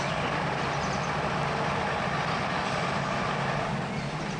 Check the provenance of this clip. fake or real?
real